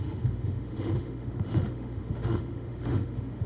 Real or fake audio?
fake